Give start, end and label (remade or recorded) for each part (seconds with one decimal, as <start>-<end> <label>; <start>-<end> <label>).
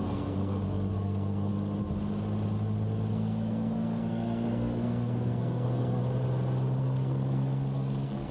0.0-1.5 remade; 1.5-3.1 recorded; 3.1-6.0 remade; 6.0-6.8 recorded; 6.8-8.3 remade